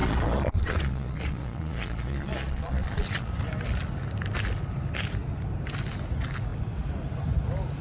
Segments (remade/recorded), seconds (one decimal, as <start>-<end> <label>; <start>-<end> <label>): 0.0-3.3 remade; 3.3-7.8 recorded